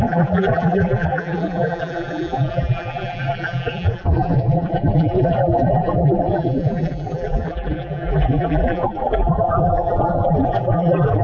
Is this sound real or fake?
fake